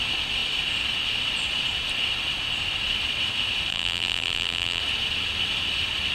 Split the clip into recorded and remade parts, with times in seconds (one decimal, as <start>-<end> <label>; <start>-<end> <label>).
0.0-3.7 recorded; 3.7-4.8 remade; 4.8-6.1 recorded